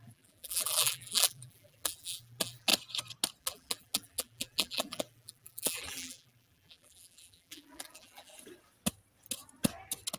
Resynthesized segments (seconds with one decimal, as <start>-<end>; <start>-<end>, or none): 0.0-2.7; 3.4-8.3